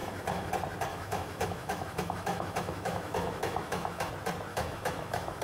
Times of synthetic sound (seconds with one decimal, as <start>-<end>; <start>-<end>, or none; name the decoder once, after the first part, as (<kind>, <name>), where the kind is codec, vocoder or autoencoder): 0.0-0.5 (autoencoder, DAC-VAE); 0.9-4.1; 4.5-5.4

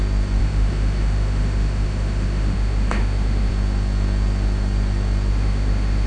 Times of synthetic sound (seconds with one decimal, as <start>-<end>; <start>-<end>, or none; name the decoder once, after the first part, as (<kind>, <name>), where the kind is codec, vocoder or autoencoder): 0.4-3.5 (autoencoder, DAC-VAE); 5.3-6.1

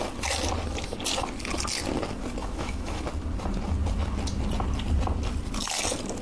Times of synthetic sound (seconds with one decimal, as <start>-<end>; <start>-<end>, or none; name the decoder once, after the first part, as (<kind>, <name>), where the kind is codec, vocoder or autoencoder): 2.4-3.0 (autoencoder, DAC-VAE)

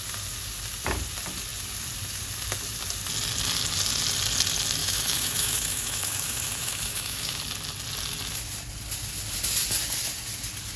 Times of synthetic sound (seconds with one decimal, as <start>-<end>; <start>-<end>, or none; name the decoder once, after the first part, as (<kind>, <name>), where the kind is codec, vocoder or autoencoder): 4.8-7.4 (autoencoder, DAC-VAE)

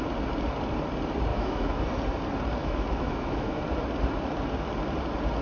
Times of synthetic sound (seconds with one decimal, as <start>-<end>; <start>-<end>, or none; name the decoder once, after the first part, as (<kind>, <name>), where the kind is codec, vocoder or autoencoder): 1.3-1.8 (autoencoder, DAC-VAE); 2.6-3.6

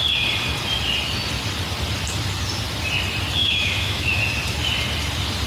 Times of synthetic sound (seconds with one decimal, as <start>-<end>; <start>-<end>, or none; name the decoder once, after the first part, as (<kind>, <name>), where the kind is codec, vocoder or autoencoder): 3.4-4.2 (autoencoder, DAC-VAE)

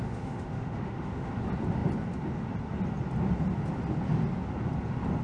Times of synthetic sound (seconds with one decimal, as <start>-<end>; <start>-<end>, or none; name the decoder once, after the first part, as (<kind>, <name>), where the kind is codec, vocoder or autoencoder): 0.0-1.3 (autoencoder, DAC-VAE)